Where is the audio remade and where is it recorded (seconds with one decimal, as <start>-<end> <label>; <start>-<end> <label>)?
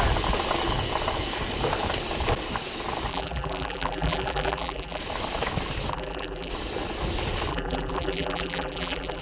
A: 0.0-3.1 recorded; 3.1-5.0 remade; 5.0-5.9 recorded; 5.9-6.5 remade; 6.5-7.5 recorded; 7.5-9.2 remade